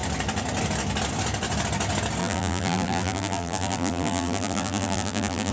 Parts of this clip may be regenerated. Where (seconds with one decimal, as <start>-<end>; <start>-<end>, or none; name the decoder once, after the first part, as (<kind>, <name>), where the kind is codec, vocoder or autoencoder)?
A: 2.2-5.5 (vocoder, BigVGAN v2)